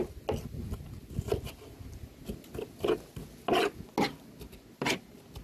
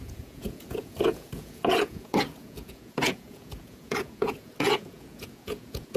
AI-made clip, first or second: second